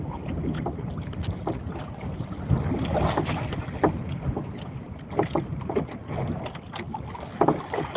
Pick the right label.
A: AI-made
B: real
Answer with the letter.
B